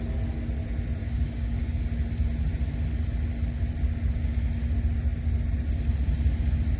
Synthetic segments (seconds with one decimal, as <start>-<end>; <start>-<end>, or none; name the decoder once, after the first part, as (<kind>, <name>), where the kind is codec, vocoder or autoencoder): 1.0-1.8 (codec, DAC)